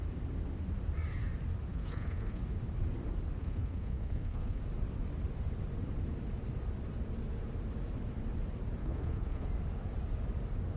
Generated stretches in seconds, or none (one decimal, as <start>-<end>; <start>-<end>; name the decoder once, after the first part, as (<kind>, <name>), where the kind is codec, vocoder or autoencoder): 1.7-2.4 (codec, SNAC); 3.4-4.6; 8.8-9.5